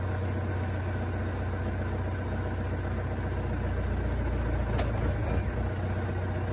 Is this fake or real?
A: real